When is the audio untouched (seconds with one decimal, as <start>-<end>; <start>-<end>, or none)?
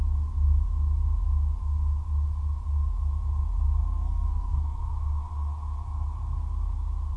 0.0-3.8; 4.8-7.2